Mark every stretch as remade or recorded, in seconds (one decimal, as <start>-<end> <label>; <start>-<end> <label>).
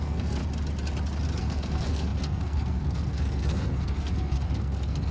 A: 0.0-0.4 remade; 0.4-1.4 recorded; 1.4-5.1 remade